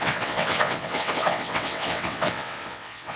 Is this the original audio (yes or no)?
no